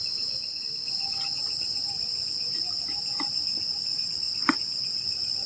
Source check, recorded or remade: recorded